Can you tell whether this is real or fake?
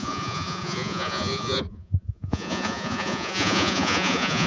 fake